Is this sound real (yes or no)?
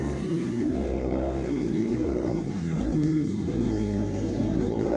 no